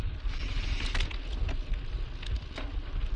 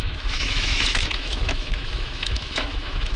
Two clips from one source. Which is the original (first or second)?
first